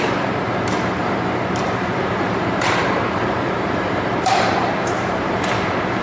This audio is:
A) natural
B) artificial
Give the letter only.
B